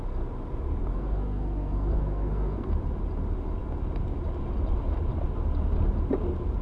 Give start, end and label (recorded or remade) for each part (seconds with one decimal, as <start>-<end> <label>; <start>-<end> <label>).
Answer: 0.0-0.9 recorded; 0.9-2.7 remade; 2.7-6.6 recorded